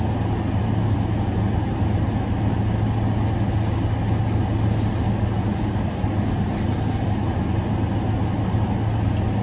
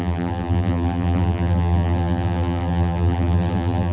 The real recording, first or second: first